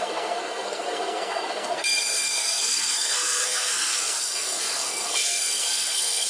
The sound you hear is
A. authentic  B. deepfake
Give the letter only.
B